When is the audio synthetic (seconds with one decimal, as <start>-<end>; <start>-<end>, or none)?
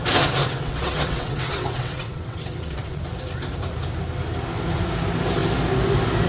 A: 0.4-3.0